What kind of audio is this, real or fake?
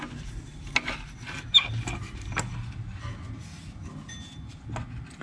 real